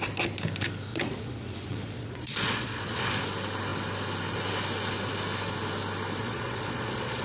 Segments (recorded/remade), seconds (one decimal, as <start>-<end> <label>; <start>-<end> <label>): 0.0-0.9 recorded; 0.9-3.2 remade; 3.2-6.2 recorded; 6.2-7.2 remade